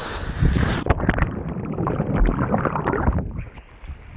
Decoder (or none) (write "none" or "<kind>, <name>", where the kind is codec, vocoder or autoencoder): none